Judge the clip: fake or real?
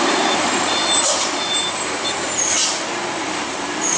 fake